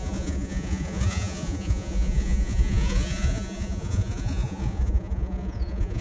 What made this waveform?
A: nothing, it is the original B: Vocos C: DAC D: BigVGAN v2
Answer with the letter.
B